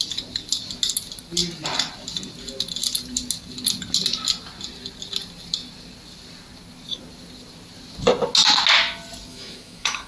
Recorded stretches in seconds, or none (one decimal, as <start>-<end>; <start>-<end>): 0.0-9.3